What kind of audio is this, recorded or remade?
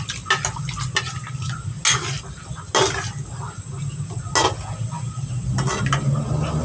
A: recorded